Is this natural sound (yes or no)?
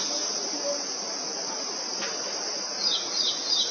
yes